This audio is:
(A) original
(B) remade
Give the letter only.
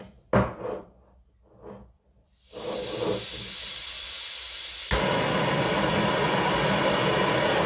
A